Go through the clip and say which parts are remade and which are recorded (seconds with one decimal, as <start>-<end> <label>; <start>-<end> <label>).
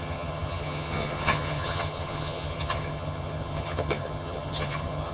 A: 0.0-5.1 remade